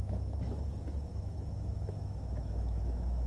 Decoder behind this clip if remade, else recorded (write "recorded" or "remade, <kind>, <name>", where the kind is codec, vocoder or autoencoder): remade, autoencoder, DAC-VAE